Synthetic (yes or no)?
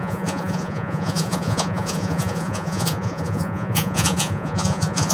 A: yes